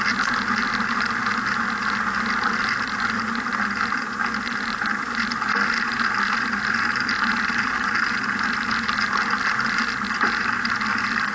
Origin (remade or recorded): recorded